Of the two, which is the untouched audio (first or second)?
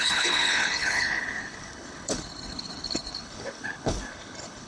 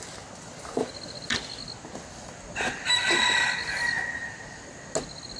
second